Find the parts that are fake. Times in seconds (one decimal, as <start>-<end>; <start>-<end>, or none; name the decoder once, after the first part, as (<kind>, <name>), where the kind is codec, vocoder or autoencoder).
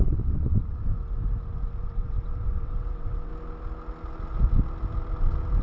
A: 0.0-0.9 (vocoder, WaveNeXt); 1.8-3.3